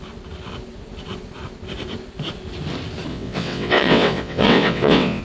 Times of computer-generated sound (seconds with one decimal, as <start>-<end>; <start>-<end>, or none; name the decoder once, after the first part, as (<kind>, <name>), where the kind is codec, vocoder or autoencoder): 3.1-5.2 (vocoder, WaveNeXt)